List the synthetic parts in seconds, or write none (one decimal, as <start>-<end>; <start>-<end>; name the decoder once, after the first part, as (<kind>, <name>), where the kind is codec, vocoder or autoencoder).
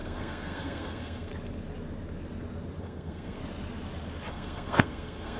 0.0-1.3 (codec, SNAC); 2.8-3.4; 4.3-5.4